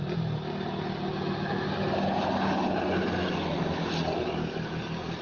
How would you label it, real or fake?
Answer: real